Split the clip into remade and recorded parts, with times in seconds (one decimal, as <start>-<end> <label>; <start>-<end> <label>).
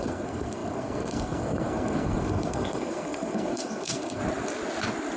0.0-4.2 remade; 4.2-5.2 recorded